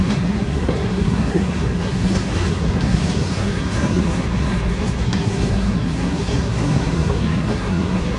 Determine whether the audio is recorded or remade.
remade